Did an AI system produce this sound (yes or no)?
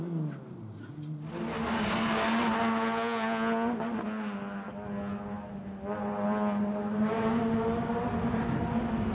no